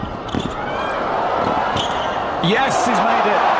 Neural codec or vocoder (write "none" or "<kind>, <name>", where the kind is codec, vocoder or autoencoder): none